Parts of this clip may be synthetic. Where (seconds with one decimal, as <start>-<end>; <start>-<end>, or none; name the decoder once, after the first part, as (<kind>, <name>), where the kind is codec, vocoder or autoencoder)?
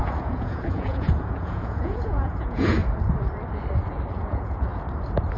0.0-2.8 (vocoder, Vocos); 4.1-4.7